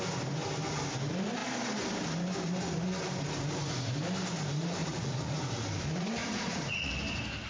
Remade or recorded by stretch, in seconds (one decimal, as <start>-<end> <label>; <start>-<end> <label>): 0.0-4.8 recorded; 4.8-5.4 remade; 5.4-6.2 recorded; 6.2-6.9 remade; 6.9-7.5 recorded